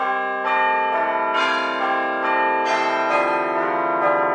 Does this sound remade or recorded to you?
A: recorded